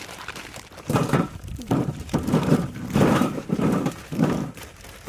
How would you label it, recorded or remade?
remade